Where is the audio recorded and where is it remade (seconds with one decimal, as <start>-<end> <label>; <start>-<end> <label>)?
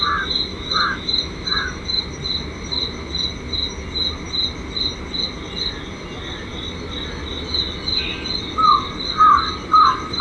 0.0-0.5 recorded; 0.5-2.0 remade; 2.0-10.2 recorded